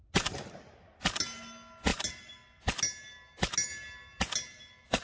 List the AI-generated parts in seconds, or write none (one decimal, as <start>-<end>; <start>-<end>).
none